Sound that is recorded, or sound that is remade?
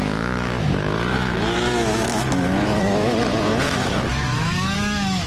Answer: remade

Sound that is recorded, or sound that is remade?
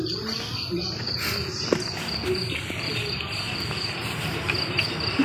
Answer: recorded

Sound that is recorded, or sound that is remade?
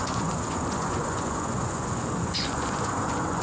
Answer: remade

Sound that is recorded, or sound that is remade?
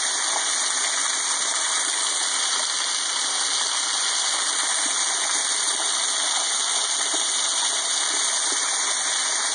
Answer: recorded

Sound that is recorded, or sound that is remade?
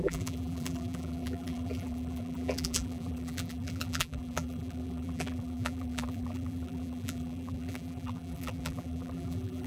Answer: remade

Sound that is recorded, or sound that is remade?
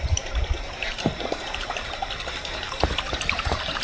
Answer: remade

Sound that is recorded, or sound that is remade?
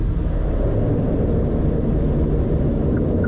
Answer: recorded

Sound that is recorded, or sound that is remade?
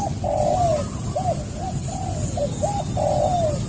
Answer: recorded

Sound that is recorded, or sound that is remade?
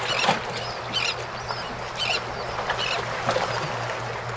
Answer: recorded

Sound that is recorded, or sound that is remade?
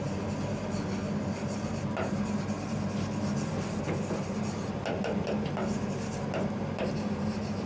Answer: recorded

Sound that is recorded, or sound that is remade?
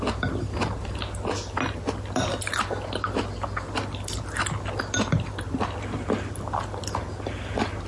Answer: recorded